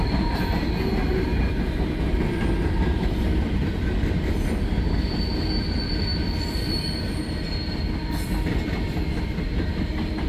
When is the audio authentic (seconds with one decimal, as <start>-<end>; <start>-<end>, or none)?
0.0-6.1; 7.2-10.3